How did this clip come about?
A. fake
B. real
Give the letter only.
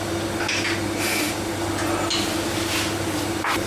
B